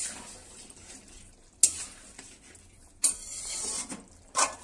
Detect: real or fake real